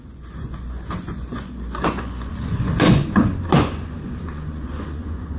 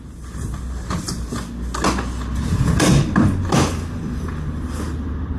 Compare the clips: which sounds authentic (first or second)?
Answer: second